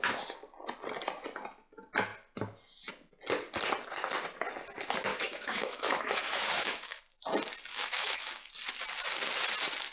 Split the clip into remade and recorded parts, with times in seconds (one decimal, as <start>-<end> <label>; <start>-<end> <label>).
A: 0.0-5.1 recorded; 5.1-7.0 remade; 7.0-7.7 recorded; 7.7-8.5 remade; 8.5-9.9 recorded